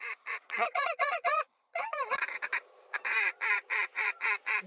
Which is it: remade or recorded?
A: remade